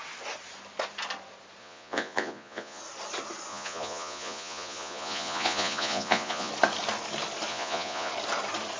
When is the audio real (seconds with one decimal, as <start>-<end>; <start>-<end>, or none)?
0.0-1.6; 2.8-3.5; 6.5-7.5; 8.1-8.8